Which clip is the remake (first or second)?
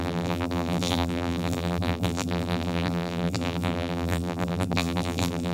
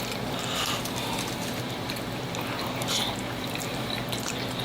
first